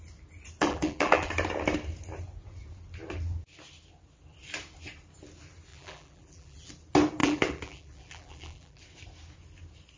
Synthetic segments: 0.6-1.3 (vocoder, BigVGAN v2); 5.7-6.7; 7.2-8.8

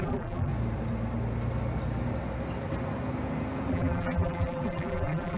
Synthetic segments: 0.0-0.5 (vocoder, BigVGAN v2); 3.7-5.4

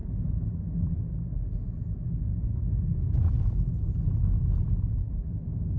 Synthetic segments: 0.0-1.0 (vocoder, BigVGAN v2)

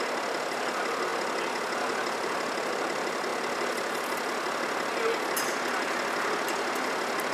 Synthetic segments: none

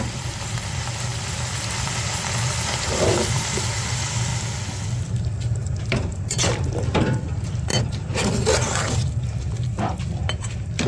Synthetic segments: 0.0-4.3 (vocoder, BigVGAN v2); 5.0-7.7; 8.8-10.9

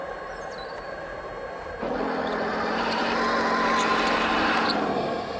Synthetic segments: 2.5-3.0 (vocoder, BigVGAN v2)

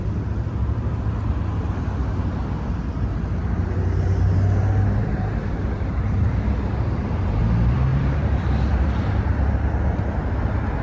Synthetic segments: 5.0-7.4 (vocoder, BigVGAN v2); 7.9-9.0

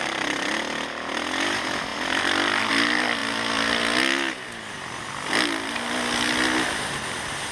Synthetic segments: none